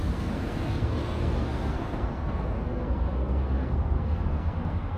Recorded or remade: remade